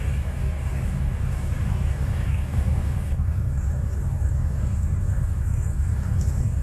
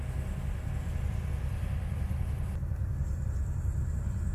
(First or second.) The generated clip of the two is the first